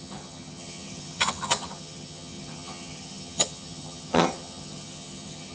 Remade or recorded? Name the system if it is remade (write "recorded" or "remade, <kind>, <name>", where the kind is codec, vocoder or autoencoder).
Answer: remade, vocoder, HiFi-GAN